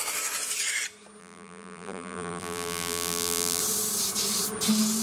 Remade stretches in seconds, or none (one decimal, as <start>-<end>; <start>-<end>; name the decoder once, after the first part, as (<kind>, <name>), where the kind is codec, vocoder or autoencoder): 1.2-3.6 (vocoder, BigVGAN v2)